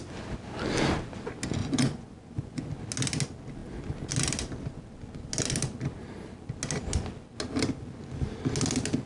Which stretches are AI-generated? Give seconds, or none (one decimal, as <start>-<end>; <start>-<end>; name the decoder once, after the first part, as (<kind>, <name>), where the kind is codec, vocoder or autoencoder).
1.6-2.7 (vocoder, Vocos)